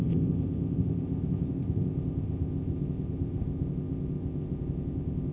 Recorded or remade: remade